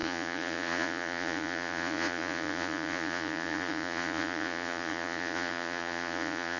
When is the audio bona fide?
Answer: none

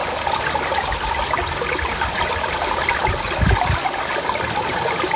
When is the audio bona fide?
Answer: 0.0-5.2

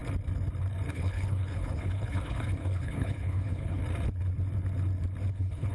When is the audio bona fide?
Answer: 0.0-0.9; 3.8-5.3

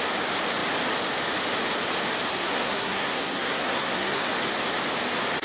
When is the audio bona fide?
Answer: 0.0-2.3; 4.3-5.4